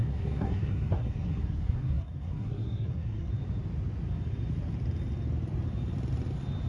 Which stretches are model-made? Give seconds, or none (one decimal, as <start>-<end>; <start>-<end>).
0.0-3.3